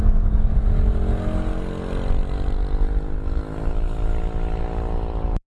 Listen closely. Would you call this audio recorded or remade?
recorded